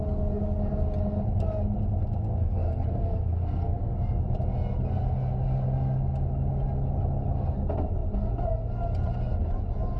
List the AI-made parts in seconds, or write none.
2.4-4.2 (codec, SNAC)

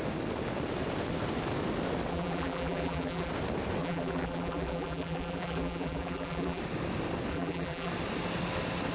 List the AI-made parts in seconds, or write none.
2.1-3.3 (vocoder, BigVGAN v2); 3.8-6.6; 7.3-7.9

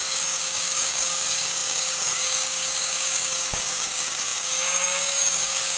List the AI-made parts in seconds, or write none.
0.0-5.8 (codec, DAC)

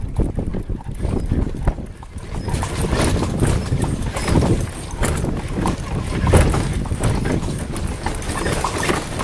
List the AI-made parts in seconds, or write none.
0.5-3.0 (vocoder, BigVGAN v2); 4.2-5.1

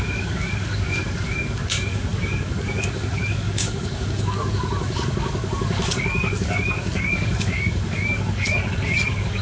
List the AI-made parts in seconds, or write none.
0.0-9.4 (codec, DAC)